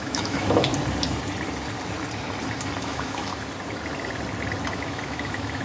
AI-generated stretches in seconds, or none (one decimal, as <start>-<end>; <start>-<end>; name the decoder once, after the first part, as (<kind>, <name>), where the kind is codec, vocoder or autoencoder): 0.0-0.7 (autoencoder, DAC-VAE); 2.8-3.3; 4.7-5.6